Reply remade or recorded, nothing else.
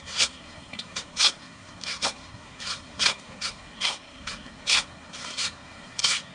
remade